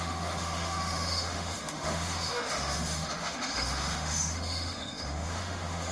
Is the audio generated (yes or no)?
yes